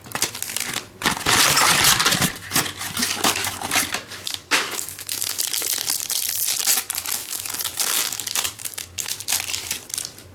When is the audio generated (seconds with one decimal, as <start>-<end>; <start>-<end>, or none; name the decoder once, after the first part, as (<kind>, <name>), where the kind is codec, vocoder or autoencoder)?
3.0-5.4 (codec, DAC); 7.2-9.1